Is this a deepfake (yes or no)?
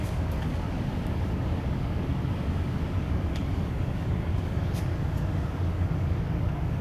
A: yes